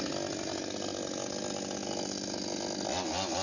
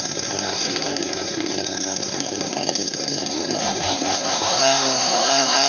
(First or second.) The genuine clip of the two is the first